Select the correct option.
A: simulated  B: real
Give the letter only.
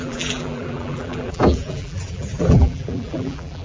A